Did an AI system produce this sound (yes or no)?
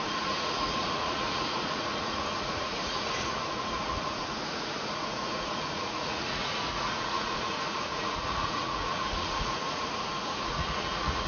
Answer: yes